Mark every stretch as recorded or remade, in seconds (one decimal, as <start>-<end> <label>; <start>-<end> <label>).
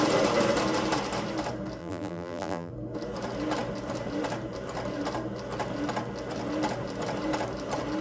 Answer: 0.0-1.8 recorded; 1.8-2.7 remade; 2.7-8.0 recorded